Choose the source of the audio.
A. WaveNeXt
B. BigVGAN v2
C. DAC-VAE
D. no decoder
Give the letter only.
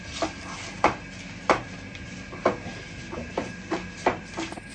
D